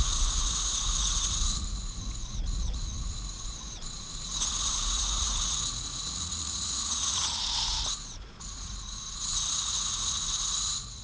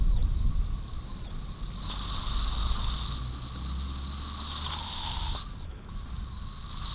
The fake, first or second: first